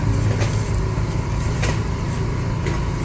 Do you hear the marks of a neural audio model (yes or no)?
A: no